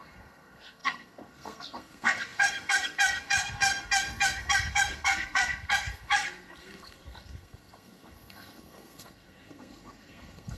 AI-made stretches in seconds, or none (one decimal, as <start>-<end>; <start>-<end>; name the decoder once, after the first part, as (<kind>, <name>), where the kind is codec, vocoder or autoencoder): 0.0-10.6 (codec, SNAC)